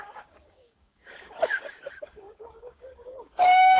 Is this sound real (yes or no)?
no